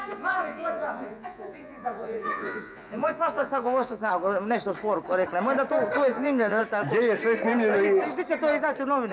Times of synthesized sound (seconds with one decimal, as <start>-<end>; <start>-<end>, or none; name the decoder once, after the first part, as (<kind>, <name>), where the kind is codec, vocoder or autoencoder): 0.0-4.1 (vocoder, Vocos); 6.1-6.6